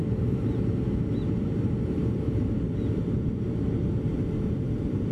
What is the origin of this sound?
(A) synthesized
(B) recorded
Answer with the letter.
A